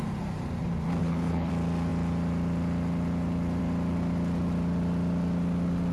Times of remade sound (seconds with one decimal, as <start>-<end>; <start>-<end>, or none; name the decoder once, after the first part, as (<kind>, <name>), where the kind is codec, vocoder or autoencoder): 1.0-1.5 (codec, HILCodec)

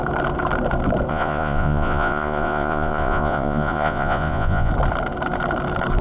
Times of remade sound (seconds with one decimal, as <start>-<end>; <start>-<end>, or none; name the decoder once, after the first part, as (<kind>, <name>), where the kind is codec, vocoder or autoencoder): 1.1-4.7 (vocoder, Vocos)

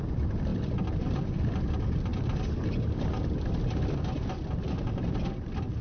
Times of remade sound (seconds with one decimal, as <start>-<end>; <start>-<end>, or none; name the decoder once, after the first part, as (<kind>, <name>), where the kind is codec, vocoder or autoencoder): none

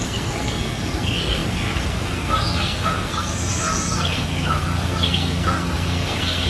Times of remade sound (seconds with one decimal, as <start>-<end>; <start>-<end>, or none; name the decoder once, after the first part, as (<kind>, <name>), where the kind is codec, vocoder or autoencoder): 0.0-6.5 (codec, SNAC)

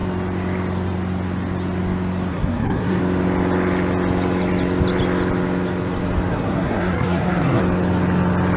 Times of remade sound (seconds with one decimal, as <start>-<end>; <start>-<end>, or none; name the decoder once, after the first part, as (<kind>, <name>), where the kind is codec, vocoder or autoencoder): 2.3-3.0 (codec, SNAC); 6.3-7.6

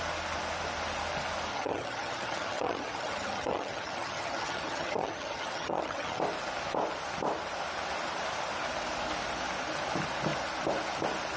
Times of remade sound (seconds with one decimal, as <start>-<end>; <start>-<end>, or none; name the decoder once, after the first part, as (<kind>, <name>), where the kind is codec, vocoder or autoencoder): 1.5-6.2 (vocoder, HiFi-GAN)

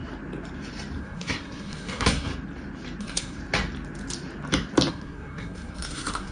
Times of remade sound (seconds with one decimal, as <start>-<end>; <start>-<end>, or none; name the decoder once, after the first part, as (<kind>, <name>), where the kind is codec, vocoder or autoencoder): 1.0-2.3 (codec, SNAC); 3.0-3.4; 4.9-6.3